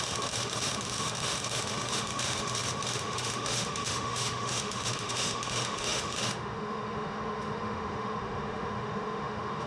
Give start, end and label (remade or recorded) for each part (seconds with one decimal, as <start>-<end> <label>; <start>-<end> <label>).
0.0-9.7 remade